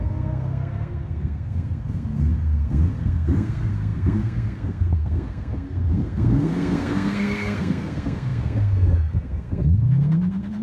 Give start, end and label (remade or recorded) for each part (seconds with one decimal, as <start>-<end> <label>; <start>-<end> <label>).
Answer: 0.0-10.6 remade